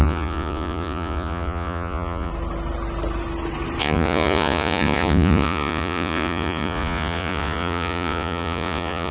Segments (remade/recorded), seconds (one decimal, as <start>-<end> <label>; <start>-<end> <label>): 0.0-2.3 remade; 2.3-3.8 recorded; 3.8-9.1 remade